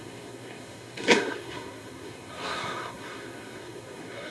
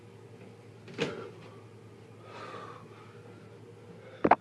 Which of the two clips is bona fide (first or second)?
second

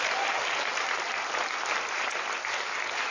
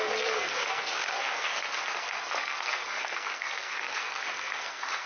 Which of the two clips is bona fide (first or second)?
first